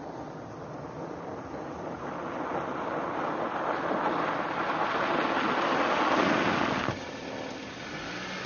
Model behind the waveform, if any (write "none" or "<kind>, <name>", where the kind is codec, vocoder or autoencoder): none